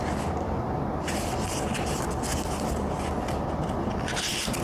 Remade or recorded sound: recorded